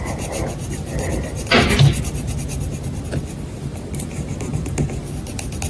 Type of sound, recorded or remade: recorded